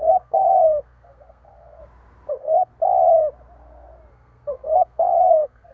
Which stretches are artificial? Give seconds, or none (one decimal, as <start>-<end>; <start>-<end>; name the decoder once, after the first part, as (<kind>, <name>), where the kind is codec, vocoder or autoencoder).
0.0-1.8 (codec, SNAC); 2.3-2.7; 4.1-5.7